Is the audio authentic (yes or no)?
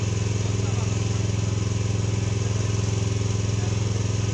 yes